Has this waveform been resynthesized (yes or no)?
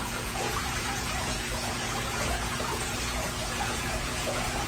yes